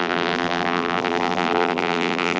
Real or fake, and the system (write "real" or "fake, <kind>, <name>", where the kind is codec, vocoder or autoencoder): fake, vocoder, BigVGAN v2